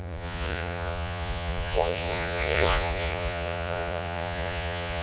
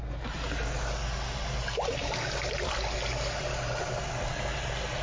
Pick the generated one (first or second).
first